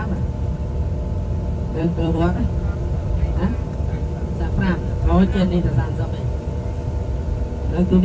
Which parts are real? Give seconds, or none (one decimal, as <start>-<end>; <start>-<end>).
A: 0.0-1.7; 4.7-5.3; 6.6-8.0

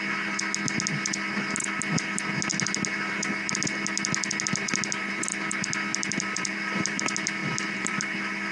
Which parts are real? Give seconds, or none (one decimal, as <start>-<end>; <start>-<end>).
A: 0.0-5.9; 7.0-7.4

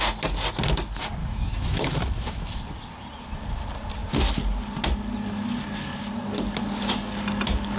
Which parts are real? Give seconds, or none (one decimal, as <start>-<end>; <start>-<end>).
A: 0.0-1.2; 2.6-7.8

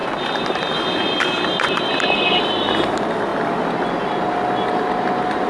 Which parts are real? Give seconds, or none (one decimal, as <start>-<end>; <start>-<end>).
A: 2.0-5.5

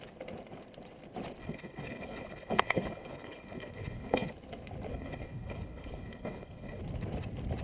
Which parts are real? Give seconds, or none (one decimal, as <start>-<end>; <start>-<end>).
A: 0.0-1.4; 4.3-4.9; 6.8-7.6